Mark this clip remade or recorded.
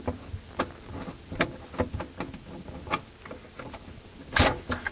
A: recorded